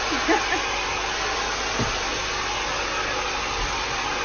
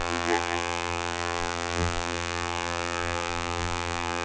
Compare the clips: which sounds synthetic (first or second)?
second